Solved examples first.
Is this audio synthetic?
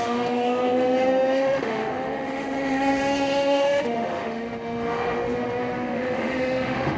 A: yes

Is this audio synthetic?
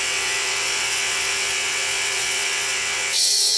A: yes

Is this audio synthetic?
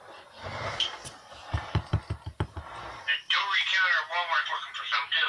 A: yes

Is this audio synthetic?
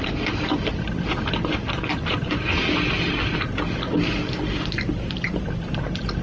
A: no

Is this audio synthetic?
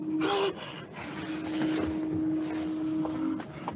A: no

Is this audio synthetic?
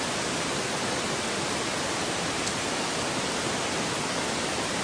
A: yes